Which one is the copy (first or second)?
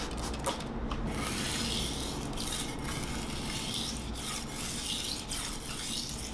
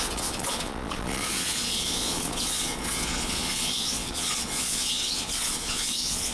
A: second